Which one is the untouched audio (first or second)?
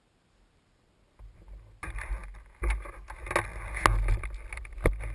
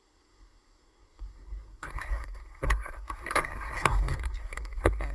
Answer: first